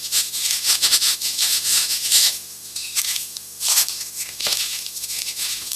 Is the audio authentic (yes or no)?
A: no